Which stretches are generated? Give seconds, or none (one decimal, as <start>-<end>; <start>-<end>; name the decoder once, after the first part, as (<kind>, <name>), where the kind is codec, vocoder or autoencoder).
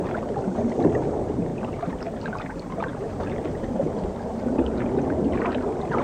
none